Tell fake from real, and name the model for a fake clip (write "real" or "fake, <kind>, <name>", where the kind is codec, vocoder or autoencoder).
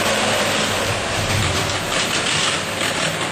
real